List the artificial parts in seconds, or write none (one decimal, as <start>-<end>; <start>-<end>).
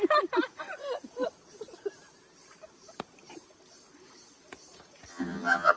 5.1-5.8